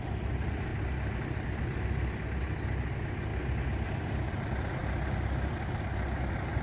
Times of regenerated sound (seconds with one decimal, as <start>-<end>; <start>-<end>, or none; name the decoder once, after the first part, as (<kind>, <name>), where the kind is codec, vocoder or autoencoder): none